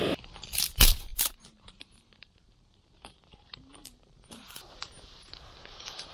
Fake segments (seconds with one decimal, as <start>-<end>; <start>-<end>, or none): 1.1-2.8; 3.8-6.1